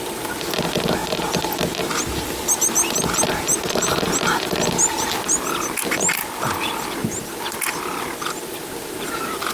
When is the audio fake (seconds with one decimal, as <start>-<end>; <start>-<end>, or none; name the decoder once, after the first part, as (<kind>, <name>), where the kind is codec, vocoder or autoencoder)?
none